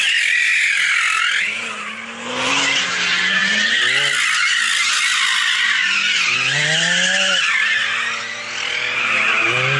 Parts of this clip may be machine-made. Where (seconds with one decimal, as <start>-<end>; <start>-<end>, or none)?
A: none

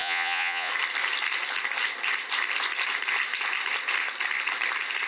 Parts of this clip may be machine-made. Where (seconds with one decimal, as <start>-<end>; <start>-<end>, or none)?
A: 0.0-0.7

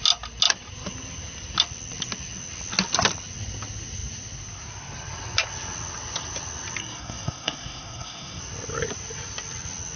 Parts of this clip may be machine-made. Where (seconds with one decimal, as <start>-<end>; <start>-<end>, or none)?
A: 6.8-8.4

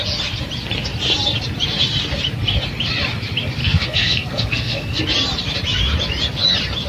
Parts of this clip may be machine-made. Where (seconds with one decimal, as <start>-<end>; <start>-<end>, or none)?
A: 3.6-5.0

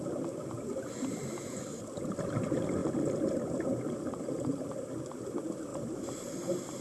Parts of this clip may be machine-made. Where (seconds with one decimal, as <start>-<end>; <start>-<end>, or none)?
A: none

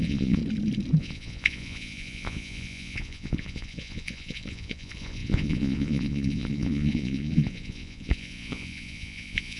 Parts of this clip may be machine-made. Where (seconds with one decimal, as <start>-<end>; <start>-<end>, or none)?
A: 0.0-0.4; 1.0-9.6

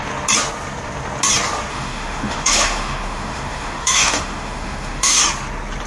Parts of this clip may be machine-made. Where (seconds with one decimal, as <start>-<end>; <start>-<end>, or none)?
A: 1.7-5.2

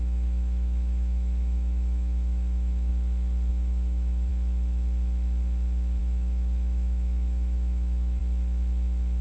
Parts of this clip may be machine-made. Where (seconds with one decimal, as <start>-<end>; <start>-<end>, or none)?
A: 0.0-2.9; 3.5-4.3; 6.0-8.2